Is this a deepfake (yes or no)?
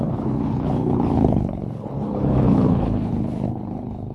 yes